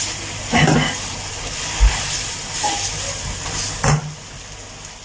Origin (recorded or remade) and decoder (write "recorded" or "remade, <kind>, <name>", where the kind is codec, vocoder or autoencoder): recorded